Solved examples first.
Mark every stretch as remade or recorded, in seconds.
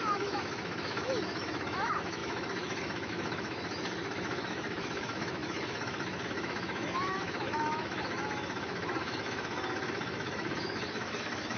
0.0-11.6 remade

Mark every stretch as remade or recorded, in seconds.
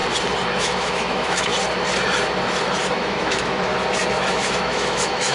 0.0-0.6 recorded; 0.6-1.5 remade; 1.5-2.9 recorded; 2.9-3.7 remade; 3.7-4.3 recorded; 4.3-5.3 remade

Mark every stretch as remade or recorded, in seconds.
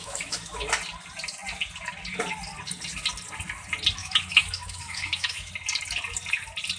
0.0-0.7 remade; 0.7-4.0 recorded; 4.0-5.5 remade; 5.5-6.8 recorded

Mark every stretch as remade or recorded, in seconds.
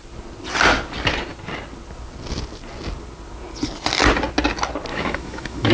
0.0-4.9 recorded; 4.9-5.7 remade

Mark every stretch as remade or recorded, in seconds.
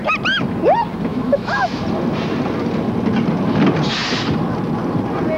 0.0-1.1 recorded; 1.1-1.8 remade; 1.8-5.4 recorded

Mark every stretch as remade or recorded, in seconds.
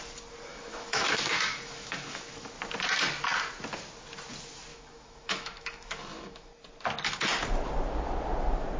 0.0-0.5 recorded; 0.5-2.5 remade; 2.5-4.7 recorded; 4.7-6.5 remade; 6.5-8.8 recorded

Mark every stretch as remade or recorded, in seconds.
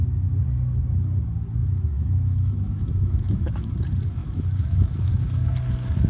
0.0-1.6 recorded; 1.6-3.7 remade; 3.7-4.2 recorded; 4.2-5.1 remade; 5.1-6.1 recorded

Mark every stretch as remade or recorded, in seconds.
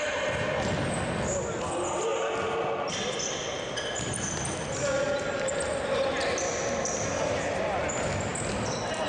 0.0-9.1 recorded